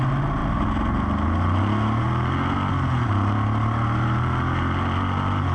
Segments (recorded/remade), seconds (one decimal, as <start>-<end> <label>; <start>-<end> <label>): 0.0-5.5 recorded